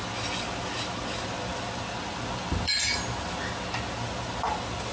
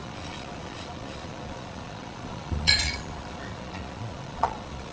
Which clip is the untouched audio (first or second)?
first